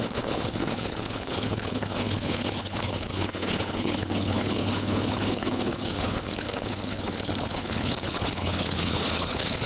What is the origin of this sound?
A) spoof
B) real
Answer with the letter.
A